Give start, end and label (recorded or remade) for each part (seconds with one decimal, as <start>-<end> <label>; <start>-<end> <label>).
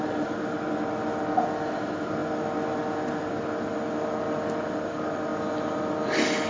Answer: 0.0-6.5 recorded